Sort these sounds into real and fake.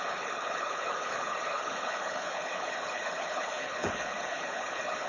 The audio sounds fake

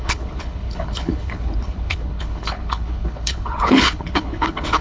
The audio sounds fake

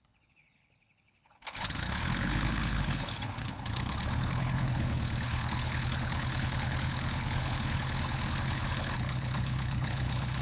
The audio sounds fake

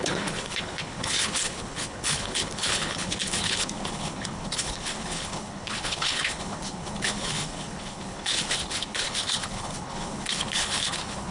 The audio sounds fake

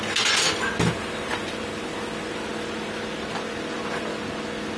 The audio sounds real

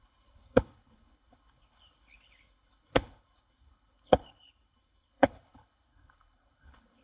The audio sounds fake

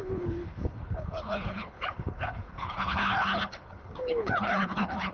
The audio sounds fake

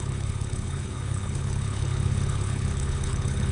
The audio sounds fake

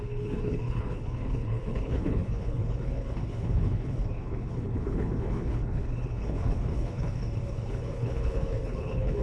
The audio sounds fake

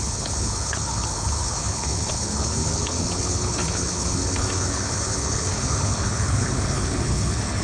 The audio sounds fake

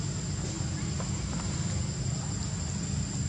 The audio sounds real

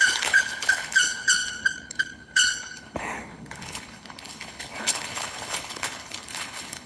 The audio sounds fake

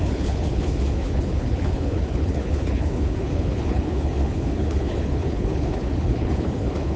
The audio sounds fake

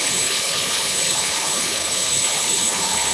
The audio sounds fake